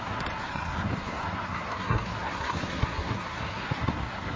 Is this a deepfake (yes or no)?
yes